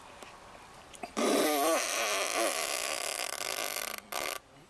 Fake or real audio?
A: real